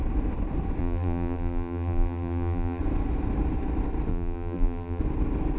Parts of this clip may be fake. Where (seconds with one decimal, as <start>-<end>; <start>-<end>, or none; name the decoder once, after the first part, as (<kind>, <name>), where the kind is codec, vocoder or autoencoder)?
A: 0.8-2.8 (vocoder, BigVGAN v2); 4.1-5.0